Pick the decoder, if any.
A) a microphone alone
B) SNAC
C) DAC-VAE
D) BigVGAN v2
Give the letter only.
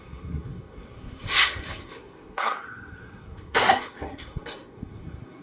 B